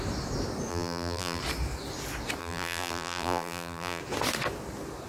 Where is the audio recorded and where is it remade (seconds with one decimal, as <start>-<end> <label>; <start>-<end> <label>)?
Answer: 0.0-0.7 recorded; 0.7-1.4 remade; 1.4-2.4 recorded; 2.4-4.0 remade; 4.0-5.1 recorded